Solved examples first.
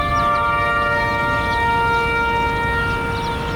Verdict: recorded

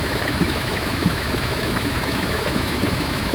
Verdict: remade